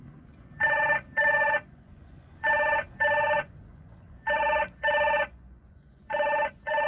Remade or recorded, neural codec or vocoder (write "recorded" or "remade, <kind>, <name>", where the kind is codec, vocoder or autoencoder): remade, vocoder, Vocos